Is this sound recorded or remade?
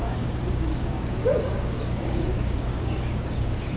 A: remade